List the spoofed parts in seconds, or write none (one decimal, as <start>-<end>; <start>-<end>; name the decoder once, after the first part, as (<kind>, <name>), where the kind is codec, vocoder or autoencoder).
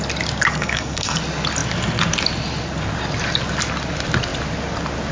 0.5-1.2 (codec, SNAC)